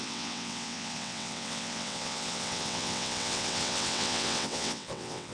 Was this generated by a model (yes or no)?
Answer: yes